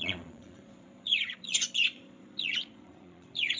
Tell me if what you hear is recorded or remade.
remade